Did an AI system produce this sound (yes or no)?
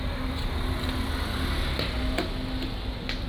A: no